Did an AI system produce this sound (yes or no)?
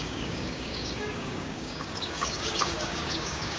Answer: yes